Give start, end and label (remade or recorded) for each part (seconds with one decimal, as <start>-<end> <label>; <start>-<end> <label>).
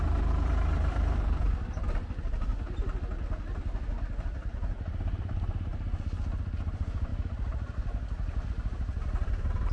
0.0-2.5 remade; 2.5-3.6 recorded; 3.6-5.7 remade; 5.7-6.4 recorded; 6.4-7.1 remade; 7.1-8.5 recorded; 8.5-9.7 remade